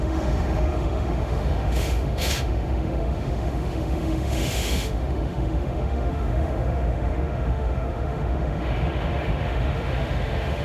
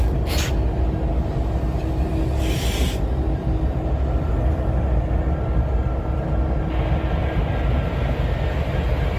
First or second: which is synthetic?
first